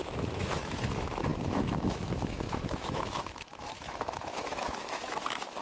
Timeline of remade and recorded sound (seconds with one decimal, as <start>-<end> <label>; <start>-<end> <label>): 0.0-5.6 remade